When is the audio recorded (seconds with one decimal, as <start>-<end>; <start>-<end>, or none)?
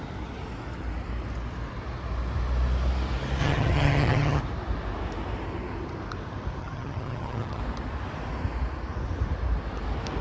0.0-3.4; 4.4-6.6; 7.6-10.2